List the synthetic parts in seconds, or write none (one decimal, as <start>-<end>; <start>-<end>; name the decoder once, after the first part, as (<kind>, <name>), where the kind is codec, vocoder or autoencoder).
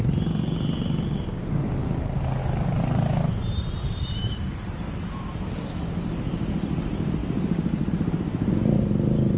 2.4-4.9 (vocoder, BigVGAN v2); 7.2-7.9